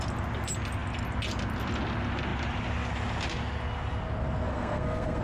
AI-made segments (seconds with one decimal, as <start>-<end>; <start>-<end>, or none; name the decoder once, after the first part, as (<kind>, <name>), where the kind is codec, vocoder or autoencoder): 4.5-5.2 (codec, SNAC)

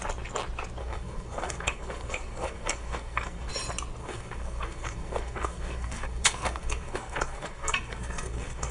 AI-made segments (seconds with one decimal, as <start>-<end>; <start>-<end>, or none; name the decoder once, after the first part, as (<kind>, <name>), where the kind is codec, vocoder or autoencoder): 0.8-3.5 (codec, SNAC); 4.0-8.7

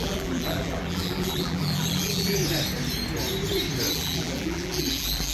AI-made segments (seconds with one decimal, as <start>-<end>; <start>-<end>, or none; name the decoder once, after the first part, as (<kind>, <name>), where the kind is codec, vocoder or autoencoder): 0.0-2.4 (vocoder, BigVGAN v2); 3.9-5.3